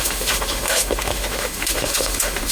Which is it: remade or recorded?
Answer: remade